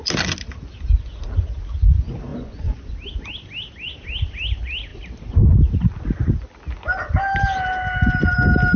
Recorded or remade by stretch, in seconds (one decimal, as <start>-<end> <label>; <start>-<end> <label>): 0.0-2.3 recorded; 2.3-2.9 remade; 2.9-8.8 recorded